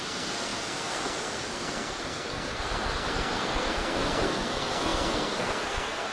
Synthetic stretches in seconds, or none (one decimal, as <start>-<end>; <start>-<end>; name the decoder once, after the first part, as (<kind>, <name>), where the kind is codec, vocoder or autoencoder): 0.0-6.1 (codec, SNAC)